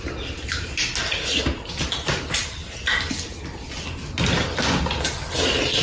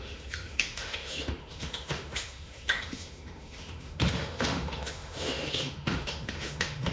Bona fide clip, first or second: first